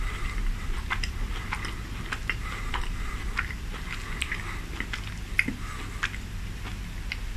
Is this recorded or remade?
recorded